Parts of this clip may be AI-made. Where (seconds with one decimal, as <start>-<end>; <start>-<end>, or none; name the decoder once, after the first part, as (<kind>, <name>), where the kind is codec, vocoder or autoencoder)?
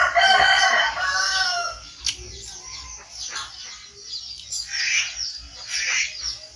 0.6-2.0 (codec, DAC)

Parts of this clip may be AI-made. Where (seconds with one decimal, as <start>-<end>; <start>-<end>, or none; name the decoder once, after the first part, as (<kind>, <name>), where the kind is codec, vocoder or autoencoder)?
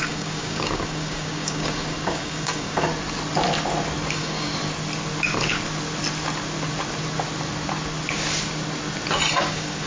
0.0-2.9 (codec, DAC); 4.1-4.5; 9.4-9.9